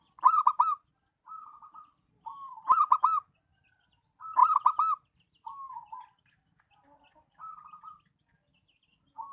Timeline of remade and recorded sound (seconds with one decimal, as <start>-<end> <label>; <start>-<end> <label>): 0.0-9.3 recorded